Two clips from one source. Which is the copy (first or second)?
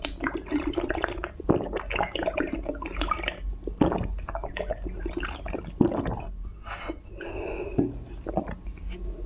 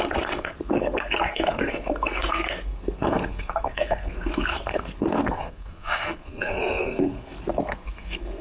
second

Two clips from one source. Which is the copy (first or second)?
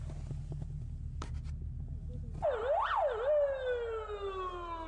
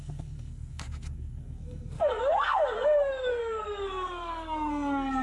second